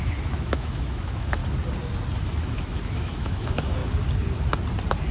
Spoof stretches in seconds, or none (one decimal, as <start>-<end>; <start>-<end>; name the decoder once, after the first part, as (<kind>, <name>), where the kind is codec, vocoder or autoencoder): 0.0-1.4 (autoencoder, DAC-VAE); 2.4-3.8